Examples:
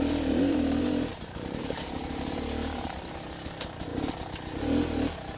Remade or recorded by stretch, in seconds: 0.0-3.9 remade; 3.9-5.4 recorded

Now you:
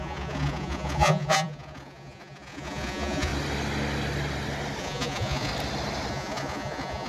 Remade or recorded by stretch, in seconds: 0.0-3.3 remade; 3.3-4.8 recorded; 4.8-5.5 remade; 5.5-6.1 recorded; 6.1-7.1 remade

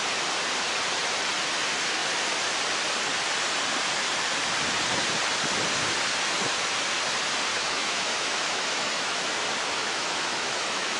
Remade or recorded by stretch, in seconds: 0.0-7.5 recorded; 7.5-9.2 remade; 9.2-9.8 recorded; 9.8-11.0 remade

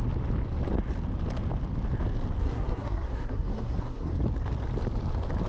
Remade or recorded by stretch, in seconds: 0.0-2.4 recorded; 2.4-4.1 remade; 4.1-5.5 recorded

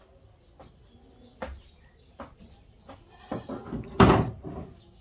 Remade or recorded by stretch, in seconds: 0.0-1.3 recorded; 1.3-2.4 remade; 2.4-3.6 recorded; 3.6-4.1 remade; 4.1-5.0 recorded